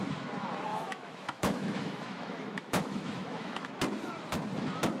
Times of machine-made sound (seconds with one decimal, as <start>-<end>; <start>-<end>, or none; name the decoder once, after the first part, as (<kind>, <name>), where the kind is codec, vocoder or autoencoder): 0.7-3.7 (autoencoder, DAC-VAE)